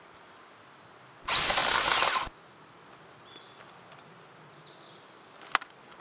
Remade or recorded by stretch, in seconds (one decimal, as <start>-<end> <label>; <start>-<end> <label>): 0.0-6.0 recorded